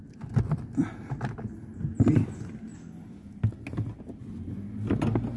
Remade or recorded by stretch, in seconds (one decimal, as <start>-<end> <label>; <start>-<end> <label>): 0.0-5.4 recorded